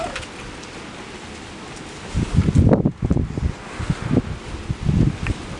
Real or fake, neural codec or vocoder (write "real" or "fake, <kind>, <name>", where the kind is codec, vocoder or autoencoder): real